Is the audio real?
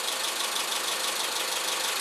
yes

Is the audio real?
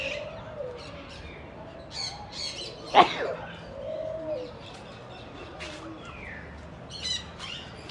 yes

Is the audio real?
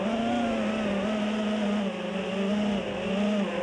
yes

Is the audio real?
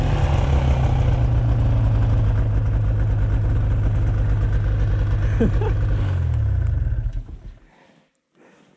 yes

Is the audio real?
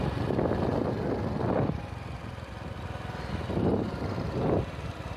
yes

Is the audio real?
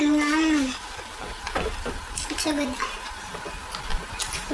no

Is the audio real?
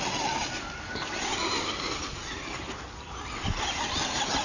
yes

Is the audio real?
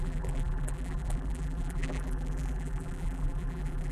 no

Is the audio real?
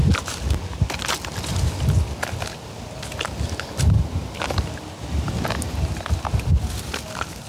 yes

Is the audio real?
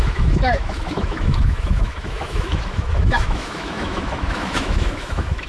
no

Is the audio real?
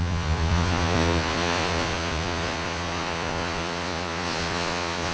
no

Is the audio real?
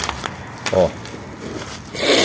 yes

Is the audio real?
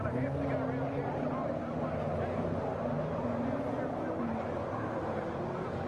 yes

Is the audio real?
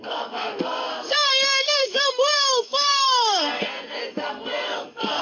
no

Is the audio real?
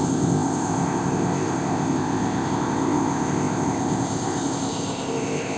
no